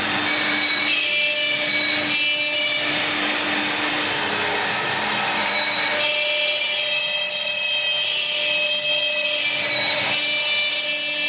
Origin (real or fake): real